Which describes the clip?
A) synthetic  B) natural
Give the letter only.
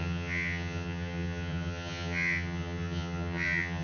A